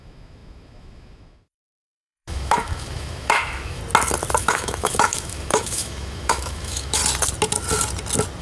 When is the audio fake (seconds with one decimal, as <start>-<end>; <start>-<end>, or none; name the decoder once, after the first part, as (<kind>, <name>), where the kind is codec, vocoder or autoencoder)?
0.0-3.8 (autoencoder, DAC-VAE); 4.4-7.0